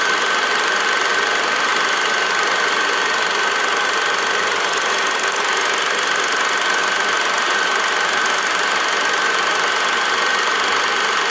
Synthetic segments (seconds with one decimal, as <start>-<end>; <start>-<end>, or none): none